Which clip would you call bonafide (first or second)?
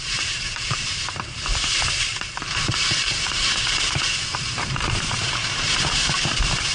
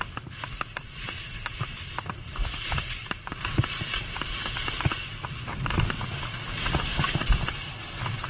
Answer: second